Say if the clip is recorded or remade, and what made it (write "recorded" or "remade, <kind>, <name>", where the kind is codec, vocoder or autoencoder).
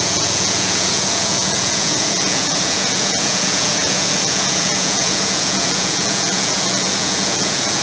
remade, vocoder, Vocos